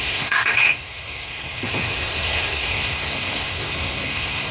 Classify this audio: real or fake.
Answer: fake